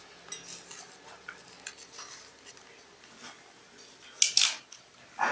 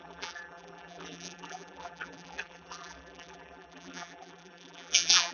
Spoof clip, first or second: second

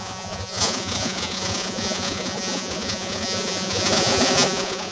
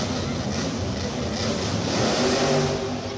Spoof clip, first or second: first